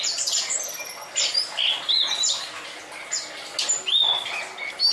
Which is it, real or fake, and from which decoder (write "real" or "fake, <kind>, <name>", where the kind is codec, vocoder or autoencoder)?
real